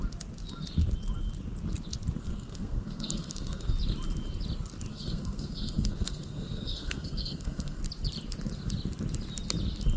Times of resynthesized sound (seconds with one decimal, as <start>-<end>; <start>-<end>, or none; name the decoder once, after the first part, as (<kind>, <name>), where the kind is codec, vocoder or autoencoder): 2.2-3.7 (codec, SNAC); 4.9-7.8